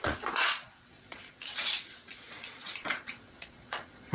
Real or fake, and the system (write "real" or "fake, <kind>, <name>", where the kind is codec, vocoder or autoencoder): fake, vocoder, Vocos